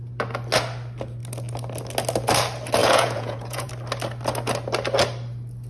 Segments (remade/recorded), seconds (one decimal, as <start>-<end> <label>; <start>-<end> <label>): 0.0-2.8 recorded; 2.8-3.7 remade; 3.7-5.7 recorded